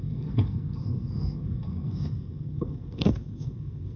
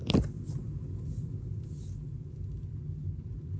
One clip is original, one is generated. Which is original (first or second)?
second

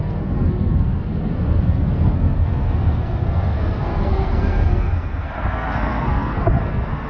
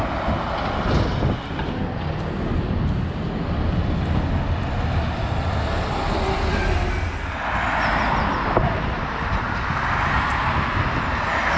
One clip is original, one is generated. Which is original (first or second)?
second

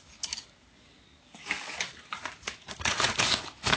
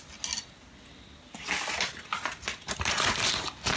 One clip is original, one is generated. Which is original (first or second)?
second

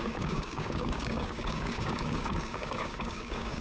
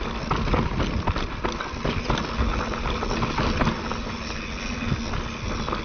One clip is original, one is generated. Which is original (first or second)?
second